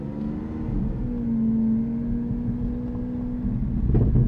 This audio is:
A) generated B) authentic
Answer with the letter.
B